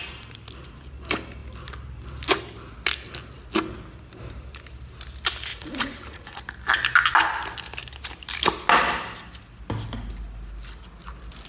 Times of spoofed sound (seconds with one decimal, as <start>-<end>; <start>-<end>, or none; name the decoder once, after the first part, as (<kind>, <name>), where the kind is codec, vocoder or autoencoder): 5.5-6.4 (vocoder, Vocos)